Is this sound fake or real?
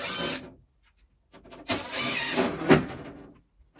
real